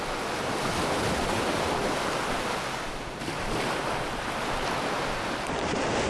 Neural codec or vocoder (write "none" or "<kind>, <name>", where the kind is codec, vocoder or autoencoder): none